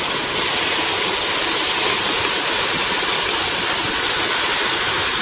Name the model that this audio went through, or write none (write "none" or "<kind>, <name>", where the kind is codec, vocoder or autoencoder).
none